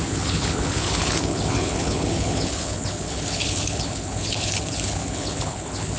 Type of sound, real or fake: fake